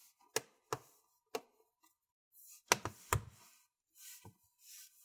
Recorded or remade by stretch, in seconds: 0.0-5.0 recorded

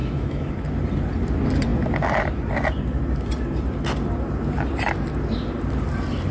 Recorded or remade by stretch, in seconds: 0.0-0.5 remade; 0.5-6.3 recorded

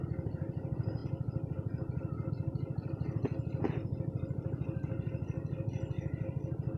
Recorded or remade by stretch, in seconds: 0.0-6.8 recorded